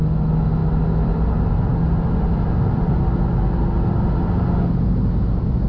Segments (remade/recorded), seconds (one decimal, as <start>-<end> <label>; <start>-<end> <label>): 0.0-5.7 recorded